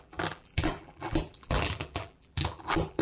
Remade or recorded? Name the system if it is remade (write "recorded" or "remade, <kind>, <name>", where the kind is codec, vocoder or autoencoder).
remade, vocoder, BigVGAN v2